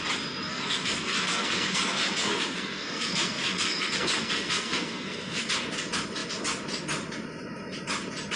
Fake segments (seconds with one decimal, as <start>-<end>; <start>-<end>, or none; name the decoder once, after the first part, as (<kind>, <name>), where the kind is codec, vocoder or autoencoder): 0.5-5.5 (codec, SNAC)